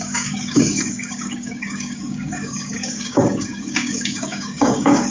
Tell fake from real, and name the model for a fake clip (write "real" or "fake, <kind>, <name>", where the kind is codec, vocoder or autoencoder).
fake, codec, DAC